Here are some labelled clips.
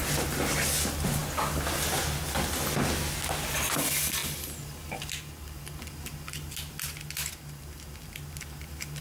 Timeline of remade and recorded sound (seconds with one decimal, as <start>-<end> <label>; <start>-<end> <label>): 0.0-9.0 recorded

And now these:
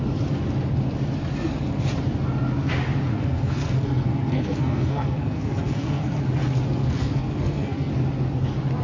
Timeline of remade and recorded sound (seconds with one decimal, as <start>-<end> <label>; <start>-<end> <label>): 0.0-3.1 recorded; 3.1-6.2 remade; 6.2-6.8 recorded; 6.8-7.9 remade; 7.9-8.8 recorded

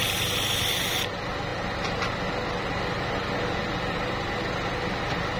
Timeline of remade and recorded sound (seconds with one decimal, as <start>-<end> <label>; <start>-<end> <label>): 0.0-5.4 recorded

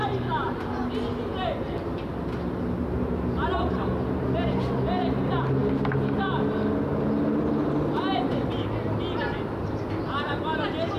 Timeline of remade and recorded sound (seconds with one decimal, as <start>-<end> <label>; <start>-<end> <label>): 0.0-11.0 recorded

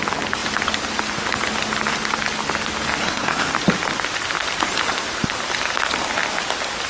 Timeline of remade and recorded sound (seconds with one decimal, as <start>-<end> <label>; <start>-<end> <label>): 0.0-3.0 recorded; 3.0-3.5 remade; 3.5-6.9 recorded